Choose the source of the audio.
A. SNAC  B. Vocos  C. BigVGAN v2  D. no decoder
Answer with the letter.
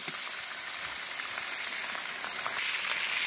D